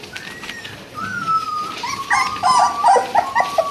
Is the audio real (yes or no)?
yes